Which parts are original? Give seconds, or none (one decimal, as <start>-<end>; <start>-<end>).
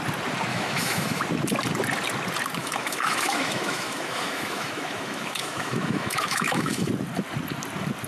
0.0-0.5; 1.2-2.6; 6.9-8.1